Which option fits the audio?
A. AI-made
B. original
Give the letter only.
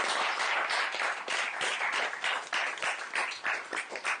B